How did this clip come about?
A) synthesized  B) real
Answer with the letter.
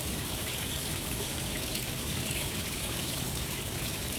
A